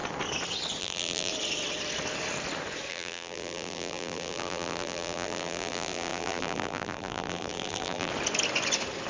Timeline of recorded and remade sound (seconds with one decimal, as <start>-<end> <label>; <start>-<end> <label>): 0.0-0.8 recorded; 0.8-1.3 remade; 1.3-2.9 recorded; 2.9-8.1 remade; 8.1-9.1 recorded